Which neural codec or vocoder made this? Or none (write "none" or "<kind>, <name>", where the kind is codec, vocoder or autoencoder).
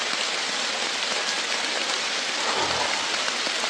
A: none